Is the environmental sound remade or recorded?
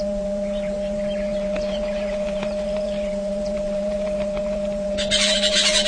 remade